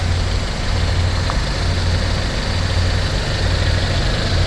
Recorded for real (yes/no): yes